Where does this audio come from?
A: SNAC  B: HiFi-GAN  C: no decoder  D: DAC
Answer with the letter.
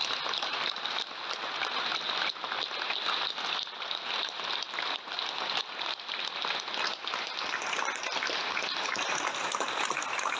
C